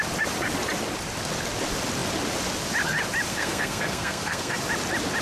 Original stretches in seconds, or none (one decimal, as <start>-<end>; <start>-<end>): 0.0-3.3; 4.6-5.2